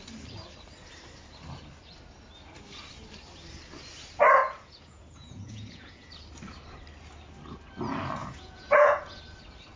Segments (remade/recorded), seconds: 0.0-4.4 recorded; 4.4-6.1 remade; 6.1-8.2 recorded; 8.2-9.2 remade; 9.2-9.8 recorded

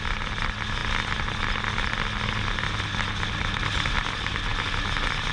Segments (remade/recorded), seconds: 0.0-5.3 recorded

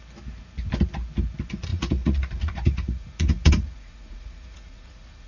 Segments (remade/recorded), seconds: 0.0-1.7 recorded; 1.7-5.3 remade